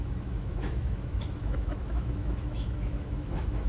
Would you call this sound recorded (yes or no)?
no